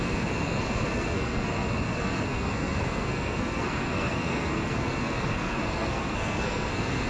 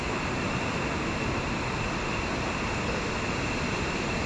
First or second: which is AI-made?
first